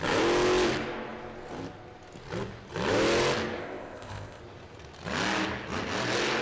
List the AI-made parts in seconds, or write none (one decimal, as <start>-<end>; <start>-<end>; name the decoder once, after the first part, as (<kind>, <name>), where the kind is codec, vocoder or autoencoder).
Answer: 3.6-4.4 (codec, ZipCodec)

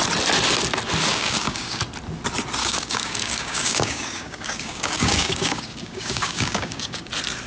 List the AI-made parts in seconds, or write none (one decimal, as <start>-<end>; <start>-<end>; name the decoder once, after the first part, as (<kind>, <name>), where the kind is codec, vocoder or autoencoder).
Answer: 1.1-1.8 (codec, DAC); 2.6-7.1

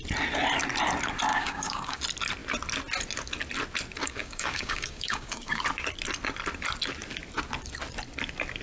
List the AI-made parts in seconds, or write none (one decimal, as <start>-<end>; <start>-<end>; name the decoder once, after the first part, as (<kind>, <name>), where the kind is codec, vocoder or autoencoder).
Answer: 1.3-2.0 (codec, DAC); 4.0-5.6

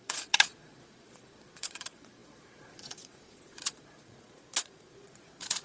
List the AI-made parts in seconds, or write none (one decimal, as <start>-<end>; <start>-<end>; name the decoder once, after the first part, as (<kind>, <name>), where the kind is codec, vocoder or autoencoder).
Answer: 0.0-5.6 (vocoder, Vocos)